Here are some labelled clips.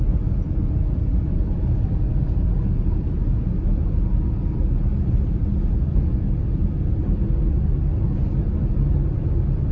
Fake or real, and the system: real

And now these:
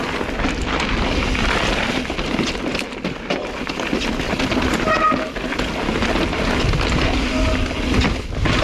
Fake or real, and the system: real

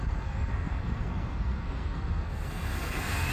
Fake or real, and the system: fake, codec, SNAC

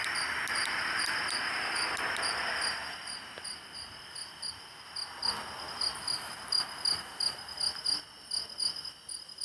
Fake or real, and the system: real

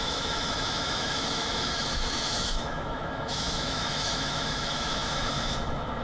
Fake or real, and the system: fake, autoencoder, DAC-VAE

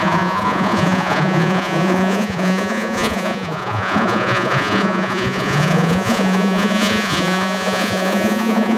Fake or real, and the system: fake, vocoder, Vocos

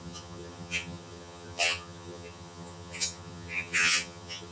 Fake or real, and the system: fake, vocoder, HiFi-GAN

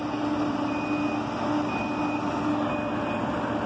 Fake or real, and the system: real